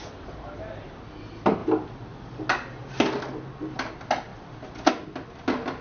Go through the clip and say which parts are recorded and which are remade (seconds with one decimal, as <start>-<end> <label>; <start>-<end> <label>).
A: 0.0-1.6 recorded; 1.6-2.4 remade; 2.4-4.3 recorded; 4.3-4.9 remade; 4.9-5.8 recorded